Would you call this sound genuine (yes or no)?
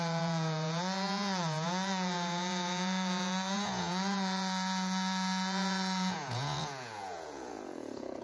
no